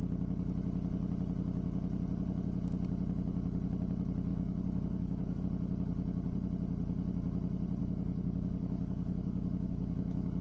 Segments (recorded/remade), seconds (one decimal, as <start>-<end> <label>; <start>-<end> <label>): 0.0-4.3 recorded; 4.3-5.4 remade; 5.4-7.8 recorded; 7.8-10.4 remade